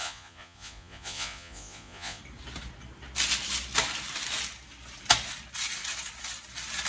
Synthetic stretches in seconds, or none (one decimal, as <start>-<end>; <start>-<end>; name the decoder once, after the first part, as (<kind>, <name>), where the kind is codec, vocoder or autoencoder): 0.0-2.2 (vocoder, Vocos)

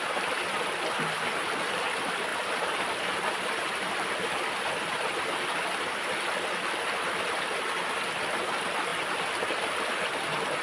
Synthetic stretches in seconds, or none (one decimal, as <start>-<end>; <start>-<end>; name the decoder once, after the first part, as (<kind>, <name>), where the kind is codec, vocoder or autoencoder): 2.3-4.6 (vocoder, BigVGAN v2)

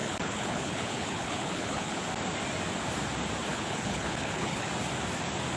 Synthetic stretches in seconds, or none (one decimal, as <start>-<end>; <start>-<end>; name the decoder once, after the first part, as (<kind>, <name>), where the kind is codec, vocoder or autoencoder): 0.0-2.0 (codec, HILCodec); 3.5-4.7